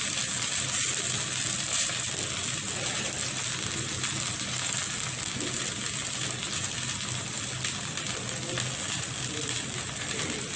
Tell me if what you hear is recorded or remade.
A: recorded